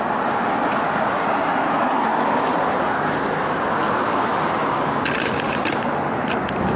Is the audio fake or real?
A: real